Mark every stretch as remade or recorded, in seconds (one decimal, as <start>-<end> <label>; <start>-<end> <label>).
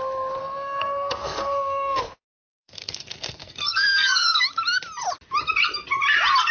0.0-0.4 recorded; 0.4-2.0 remade; 2.0-2.4 recorded; 2.4-4.4 remade; 4.4-6.5 recorded